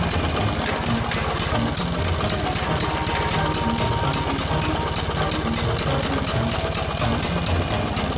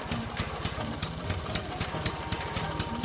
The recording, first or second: first